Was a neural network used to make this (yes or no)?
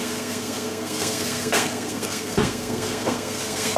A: yes